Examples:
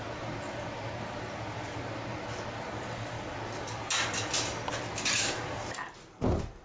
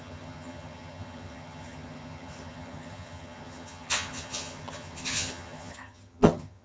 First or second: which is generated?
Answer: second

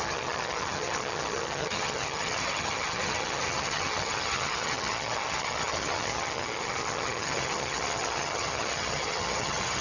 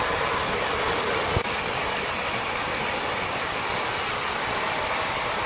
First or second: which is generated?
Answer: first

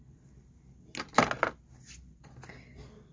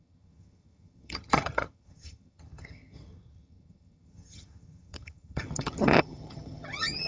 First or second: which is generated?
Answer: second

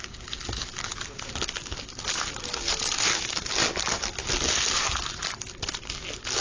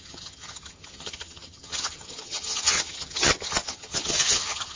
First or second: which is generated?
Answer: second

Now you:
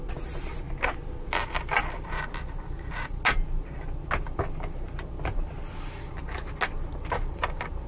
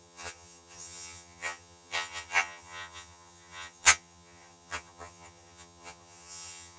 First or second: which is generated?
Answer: second